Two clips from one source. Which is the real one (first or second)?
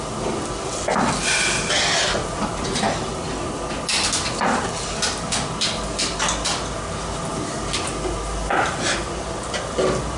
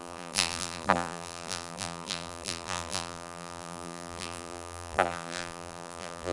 first